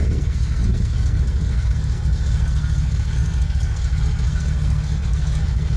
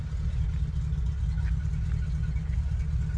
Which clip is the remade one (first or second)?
first